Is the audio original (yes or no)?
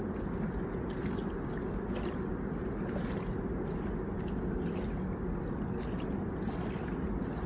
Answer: yes